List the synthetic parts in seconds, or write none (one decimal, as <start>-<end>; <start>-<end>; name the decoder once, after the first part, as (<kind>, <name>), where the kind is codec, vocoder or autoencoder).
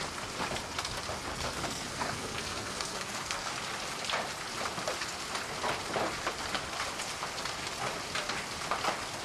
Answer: 1.3-3.5 (codec, SNAC)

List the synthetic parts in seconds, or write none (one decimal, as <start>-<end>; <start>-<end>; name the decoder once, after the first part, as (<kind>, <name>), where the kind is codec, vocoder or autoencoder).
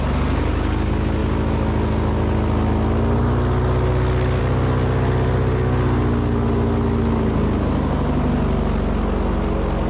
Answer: none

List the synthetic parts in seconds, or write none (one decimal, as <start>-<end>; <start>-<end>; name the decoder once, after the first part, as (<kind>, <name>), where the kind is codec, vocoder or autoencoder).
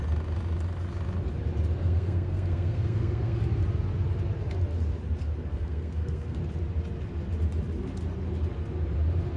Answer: 1.8-3.4 (codec, SNAC); 5.5-6.4